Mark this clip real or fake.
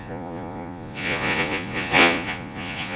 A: fake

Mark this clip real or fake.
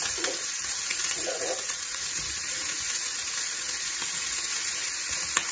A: fake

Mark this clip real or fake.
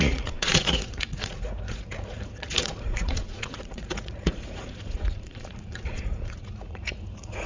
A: fake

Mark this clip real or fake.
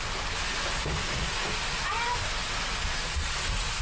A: real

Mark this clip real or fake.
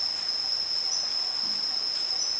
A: real